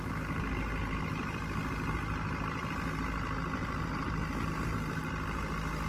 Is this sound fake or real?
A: real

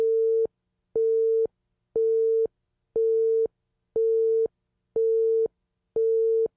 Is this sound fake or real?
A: real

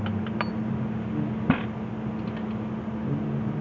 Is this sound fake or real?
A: real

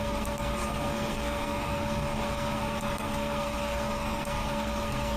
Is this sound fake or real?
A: fake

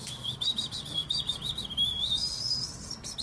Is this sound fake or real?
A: real